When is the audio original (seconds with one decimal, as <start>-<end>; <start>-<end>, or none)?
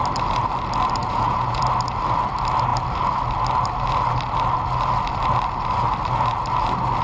0.0-1.0; 1.6-7.0